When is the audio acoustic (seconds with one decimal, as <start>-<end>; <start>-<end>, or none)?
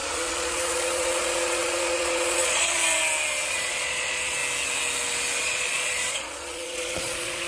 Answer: 2.8-3.5; 4.4-5.4